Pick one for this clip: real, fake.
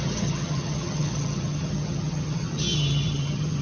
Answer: fake